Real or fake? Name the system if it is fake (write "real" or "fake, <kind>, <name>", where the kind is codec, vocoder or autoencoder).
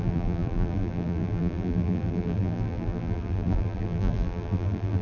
fake, vocoder, BigVGAN v2